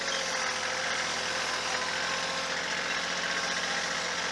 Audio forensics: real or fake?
real